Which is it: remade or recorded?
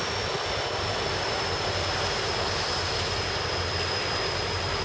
recorded